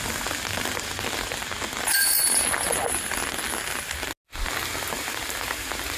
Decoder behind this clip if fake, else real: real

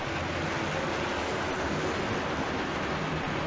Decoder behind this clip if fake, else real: real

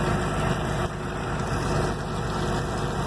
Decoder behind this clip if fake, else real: real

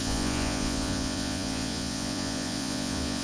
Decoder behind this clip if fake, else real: fake, vocoder, Vocos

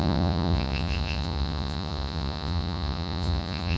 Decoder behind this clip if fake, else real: fake, vocoder, Vocos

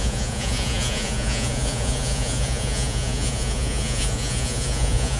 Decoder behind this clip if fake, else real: fake, vocoder, Vocos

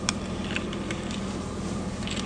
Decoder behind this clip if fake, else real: real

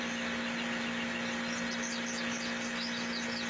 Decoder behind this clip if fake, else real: real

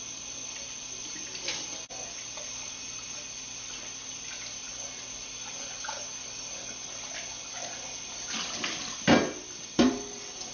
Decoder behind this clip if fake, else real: real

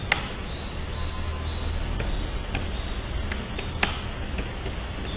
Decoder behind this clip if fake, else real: real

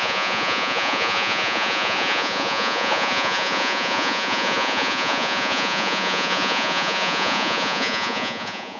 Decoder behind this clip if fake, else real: fake, vocoder, Vocos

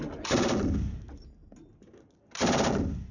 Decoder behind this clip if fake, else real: real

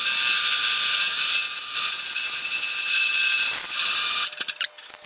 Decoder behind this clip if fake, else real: real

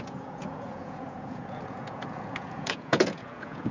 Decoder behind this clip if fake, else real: fake, vocoder, Vocos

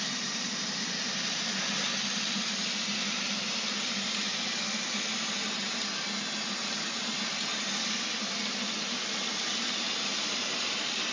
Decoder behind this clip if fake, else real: real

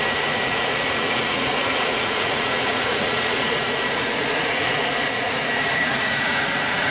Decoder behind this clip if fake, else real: fake, vocoder, Vocos